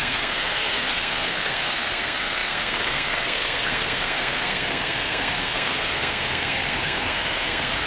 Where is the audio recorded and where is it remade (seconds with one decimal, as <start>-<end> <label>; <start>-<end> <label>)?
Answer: 0.0-7.9 remade